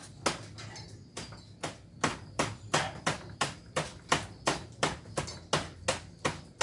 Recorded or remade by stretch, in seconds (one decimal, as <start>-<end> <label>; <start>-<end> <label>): 0.0-2.1 recorded; 2.1-5.2 remade; 5.2-6.6 recorded